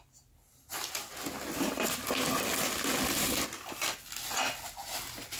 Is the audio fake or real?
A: real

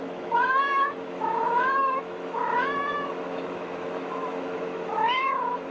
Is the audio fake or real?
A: fake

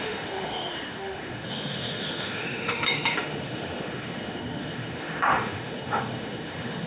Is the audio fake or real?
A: fake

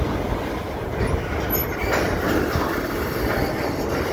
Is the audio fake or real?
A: real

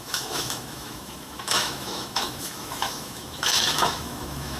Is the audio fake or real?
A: fake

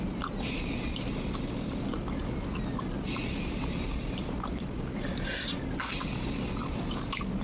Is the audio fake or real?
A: real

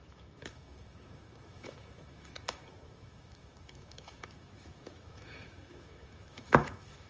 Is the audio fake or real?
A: fake